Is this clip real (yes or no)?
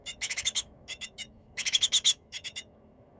no